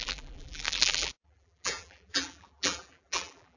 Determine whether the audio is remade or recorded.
remade